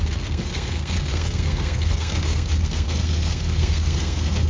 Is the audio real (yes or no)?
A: no